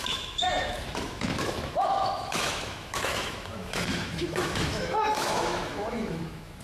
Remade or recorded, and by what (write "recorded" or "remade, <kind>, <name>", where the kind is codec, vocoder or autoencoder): remade, autoencoder, DAC-VAE